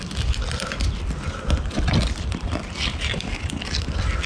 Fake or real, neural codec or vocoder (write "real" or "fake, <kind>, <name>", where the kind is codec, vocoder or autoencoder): real